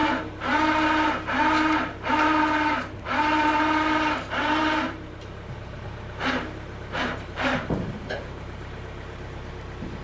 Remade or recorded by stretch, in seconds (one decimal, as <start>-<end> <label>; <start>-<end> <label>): 0.0-2.1 remade; 2.1-4.6 recorded; 4.6-9.5 remade; 9.5-10.0 recorded